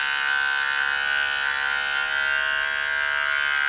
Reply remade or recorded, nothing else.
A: recorded